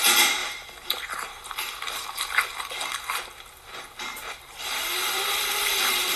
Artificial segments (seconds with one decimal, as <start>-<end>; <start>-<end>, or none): 0.4-2.4; 4.1-6.2